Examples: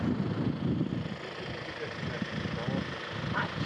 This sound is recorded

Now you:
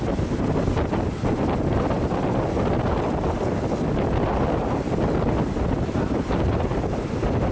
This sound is recorded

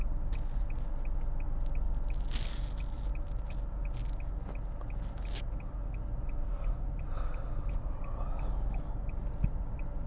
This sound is recorded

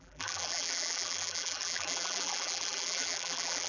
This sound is remade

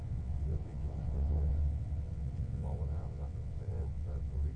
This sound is remade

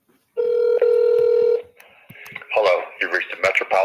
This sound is recorded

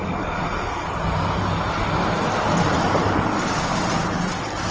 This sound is recorded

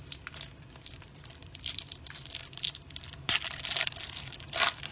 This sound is remade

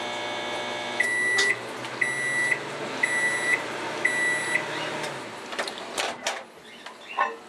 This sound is recorded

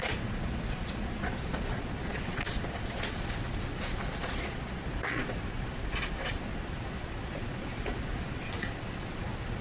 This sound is remade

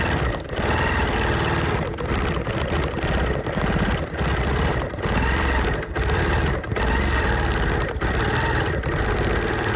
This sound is remade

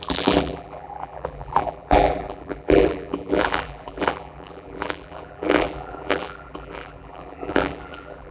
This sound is remade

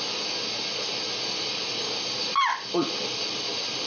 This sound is recorded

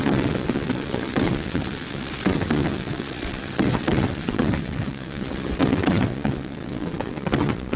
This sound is remade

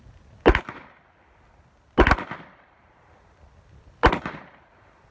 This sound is recorded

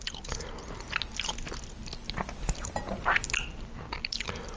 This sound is recorded